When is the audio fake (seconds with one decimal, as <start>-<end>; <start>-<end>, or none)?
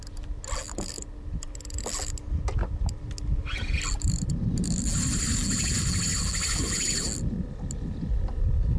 none